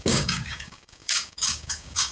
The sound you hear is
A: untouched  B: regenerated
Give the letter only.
B